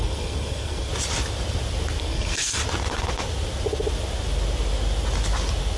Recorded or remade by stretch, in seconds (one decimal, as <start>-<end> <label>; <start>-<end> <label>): 0.0-0.9 remade; 0.9-2.0 recorded; 2.0-2.6 remade; 2.6-5.8 recorded